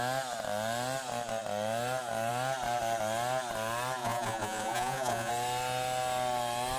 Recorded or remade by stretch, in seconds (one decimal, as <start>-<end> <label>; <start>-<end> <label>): 0.0-4.0 recorded; 4.0-5.3 remade; 5.3-6.8 recorded